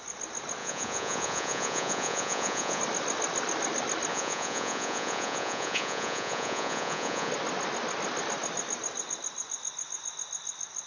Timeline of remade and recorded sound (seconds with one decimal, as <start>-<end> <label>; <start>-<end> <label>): 0.0-0.6 recorded; 0.6-2.8 remade; 2.8-4.1 recorded; 4.1-7.3 remade; 7.3-10.9 recorded